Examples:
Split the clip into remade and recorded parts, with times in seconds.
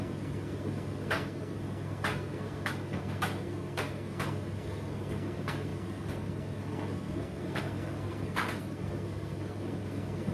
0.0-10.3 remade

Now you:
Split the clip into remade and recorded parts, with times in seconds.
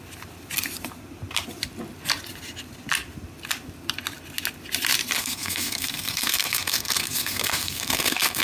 0.0-5.2 recorded; 5.2-8.4 remade